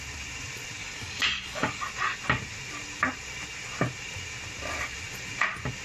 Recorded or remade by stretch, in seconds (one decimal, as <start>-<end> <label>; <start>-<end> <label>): 0.0-0.8 recorded; 0.8-1.8 remade; 1.8-5.8 recorded